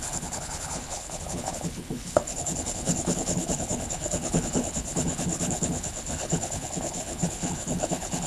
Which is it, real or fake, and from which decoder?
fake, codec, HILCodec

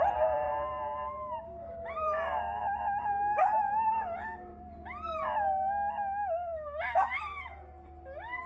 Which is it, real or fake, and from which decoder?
real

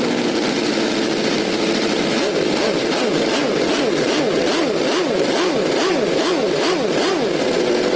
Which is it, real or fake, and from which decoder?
real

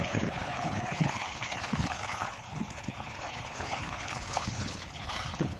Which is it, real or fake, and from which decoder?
fake, codec, HILCodec